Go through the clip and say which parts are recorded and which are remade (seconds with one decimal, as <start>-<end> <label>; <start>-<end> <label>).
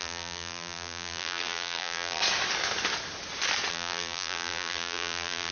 0.0-2.2 remade; 2.2-3.7 recorded; 3.7-5.5 remade